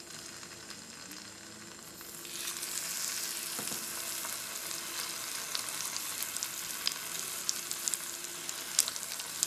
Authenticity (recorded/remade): recorded